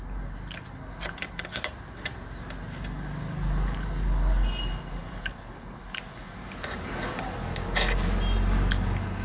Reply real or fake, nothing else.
real